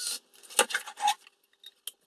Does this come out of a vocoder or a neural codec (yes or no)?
no